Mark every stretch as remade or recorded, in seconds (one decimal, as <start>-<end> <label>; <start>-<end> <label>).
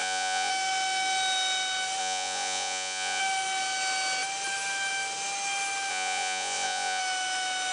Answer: 0.0-0.5 remade; 0.5-2.0 recorded; 2.0-3.2 remade; 3.2-5.9 recorded; 5.9-7.0 remade; 7.0-7.7 recorded